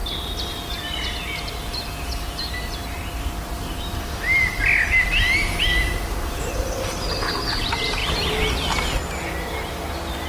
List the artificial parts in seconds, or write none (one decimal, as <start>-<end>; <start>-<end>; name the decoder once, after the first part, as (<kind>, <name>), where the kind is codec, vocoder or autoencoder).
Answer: none